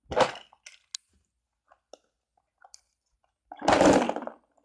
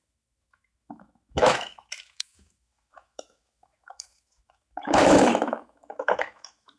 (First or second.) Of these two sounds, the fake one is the second